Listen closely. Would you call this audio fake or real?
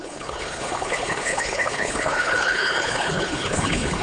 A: fake